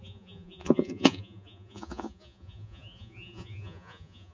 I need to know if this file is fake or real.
fake